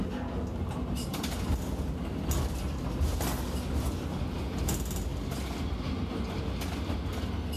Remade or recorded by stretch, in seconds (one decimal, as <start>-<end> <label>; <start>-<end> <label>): 0.0-7.6 recorded